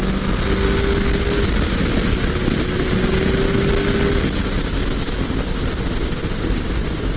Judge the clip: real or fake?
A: real